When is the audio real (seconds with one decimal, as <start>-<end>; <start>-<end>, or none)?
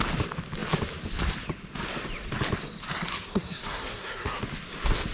0.0-3.1; 4.4-5.1